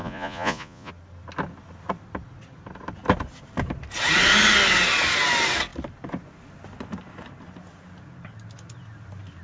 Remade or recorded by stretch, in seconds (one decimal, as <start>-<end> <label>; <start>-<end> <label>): 0.0-0.9 remade; 0.9-9.4 recorded